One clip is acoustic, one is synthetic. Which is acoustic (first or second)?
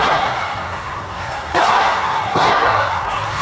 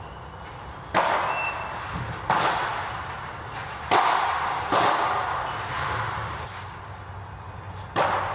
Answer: second